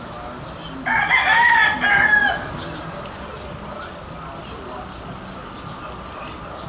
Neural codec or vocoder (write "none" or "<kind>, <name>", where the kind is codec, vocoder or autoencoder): none